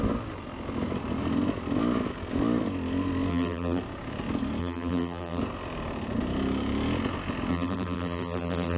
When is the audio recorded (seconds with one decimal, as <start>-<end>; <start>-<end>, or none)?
0.0-3.3; 3.8-4.6; 5.4-7.5